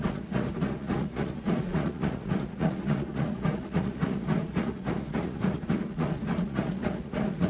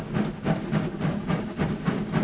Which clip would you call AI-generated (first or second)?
first